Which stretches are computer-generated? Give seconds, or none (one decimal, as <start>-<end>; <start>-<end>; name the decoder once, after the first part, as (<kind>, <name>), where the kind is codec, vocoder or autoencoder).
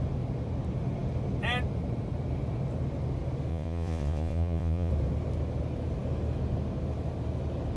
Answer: 3.5-4.9 (vocoder, Vocos)